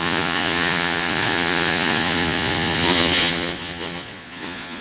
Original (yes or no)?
no